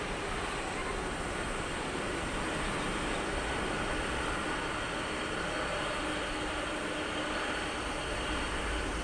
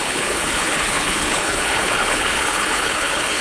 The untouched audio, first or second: first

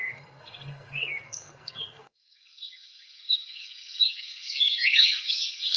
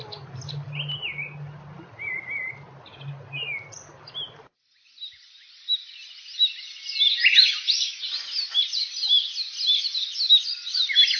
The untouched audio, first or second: second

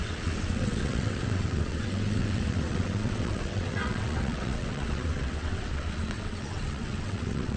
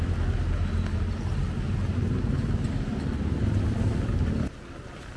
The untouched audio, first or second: second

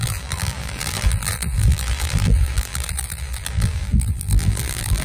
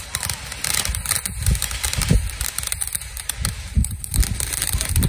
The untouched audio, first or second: second